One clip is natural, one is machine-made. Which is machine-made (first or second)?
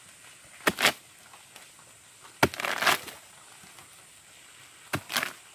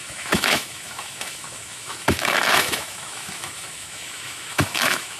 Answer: second